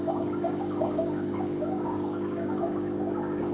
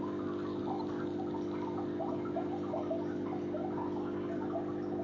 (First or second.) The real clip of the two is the second